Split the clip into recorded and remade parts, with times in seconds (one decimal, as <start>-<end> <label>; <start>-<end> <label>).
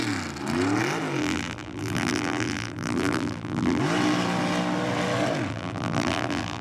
0.0-1.2 recorded; 1.2-3.8 remade; 3.8-5.5 recorded; 5.5-6.6 remade